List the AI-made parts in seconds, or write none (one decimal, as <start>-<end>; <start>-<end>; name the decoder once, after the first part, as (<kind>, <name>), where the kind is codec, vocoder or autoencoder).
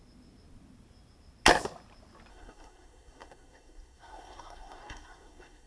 2.3-5.7 (codec, SNAC)